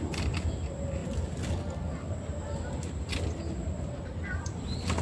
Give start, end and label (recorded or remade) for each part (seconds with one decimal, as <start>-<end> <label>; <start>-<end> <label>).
0.0-5.0 recorded